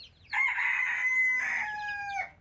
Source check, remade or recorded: recorded